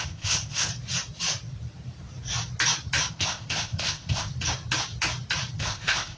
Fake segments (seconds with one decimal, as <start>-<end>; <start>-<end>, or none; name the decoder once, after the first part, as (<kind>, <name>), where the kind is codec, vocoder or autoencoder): 0.0-0.7 (codec, ZipCodec); 3.1-4.3; 5.6-6.2